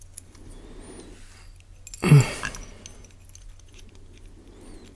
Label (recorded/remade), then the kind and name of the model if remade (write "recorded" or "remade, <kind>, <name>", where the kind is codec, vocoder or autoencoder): recorded